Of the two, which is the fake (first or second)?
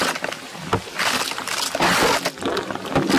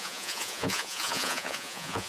second